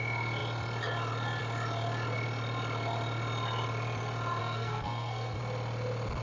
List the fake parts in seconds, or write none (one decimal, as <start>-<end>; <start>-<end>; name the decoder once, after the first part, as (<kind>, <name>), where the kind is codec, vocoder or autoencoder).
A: 4.4-5.4 (codec, SNAC)